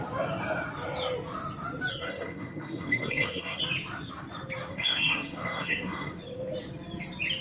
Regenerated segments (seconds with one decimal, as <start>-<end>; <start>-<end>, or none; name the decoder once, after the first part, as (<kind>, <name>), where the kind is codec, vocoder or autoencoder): 1.9-3.6 (codec, SNAC); 4.7-6.2